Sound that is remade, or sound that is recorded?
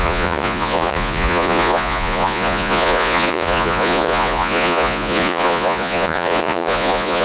remade